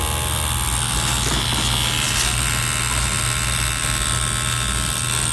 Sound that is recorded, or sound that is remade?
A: recorded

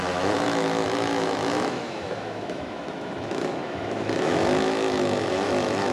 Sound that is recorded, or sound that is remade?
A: remade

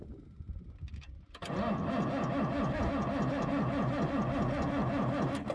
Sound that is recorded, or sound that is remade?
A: recorded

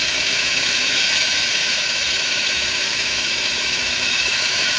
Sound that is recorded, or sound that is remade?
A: remade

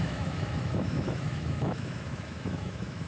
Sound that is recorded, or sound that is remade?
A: remade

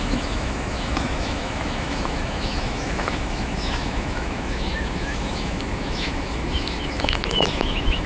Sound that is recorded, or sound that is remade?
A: remade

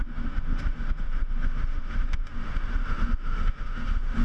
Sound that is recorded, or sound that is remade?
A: remade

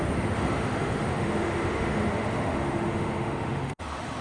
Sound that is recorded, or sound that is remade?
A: remade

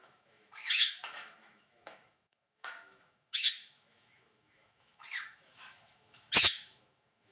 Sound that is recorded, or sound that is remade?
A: remade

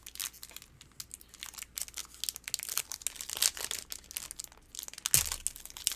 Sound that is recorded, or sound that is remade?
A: recorded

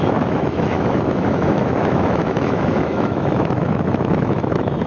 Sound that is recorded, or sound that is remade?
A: remade